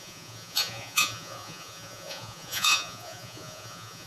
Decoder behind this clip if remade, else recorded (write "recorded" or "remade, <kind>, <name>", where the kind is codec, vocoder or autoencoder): remade, vocoder, Vocos